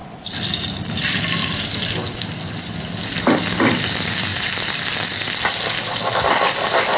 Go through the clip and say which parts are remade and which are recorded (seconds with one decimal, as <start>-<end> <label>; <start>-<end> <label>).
0.0-7.0 recorded